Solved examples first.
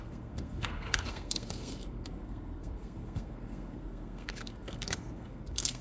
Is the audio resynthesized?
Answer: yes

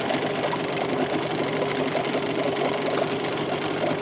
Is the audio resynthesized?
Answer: no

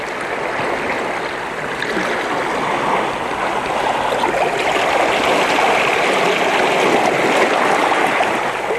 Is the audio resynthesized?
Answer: no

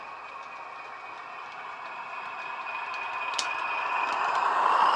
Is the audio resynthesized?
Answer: no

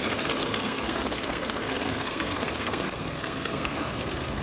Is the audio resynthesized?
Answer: yes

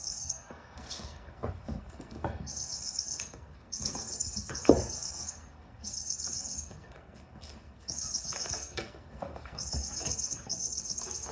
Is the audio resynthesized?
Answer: yes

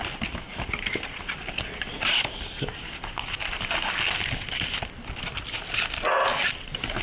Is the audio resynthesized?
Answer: no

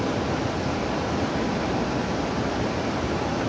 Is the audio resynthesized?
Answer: no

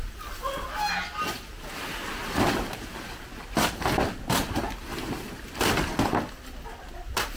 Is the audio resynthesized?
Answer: no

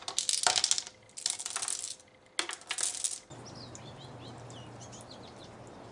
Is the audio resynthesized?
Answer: no